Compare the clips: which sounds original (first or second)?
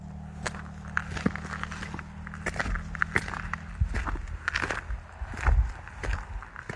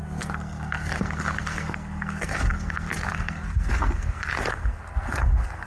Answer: first